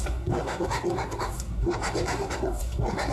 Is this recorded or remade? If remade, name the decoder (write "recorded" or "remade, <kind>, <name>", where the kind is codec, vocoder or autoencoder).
remade, codec, SNAC